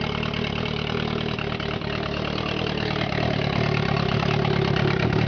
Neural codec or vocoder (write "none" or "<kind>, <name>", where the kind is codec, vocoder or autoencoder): none